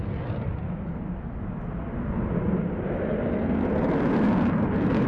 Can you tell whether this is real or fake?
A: real